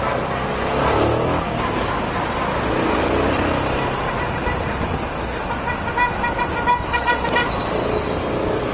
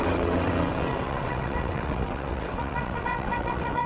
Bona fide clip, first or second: first